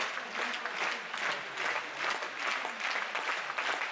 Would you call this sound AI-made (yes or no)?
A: no